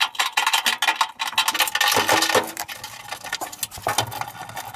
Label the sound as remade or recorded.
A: recorded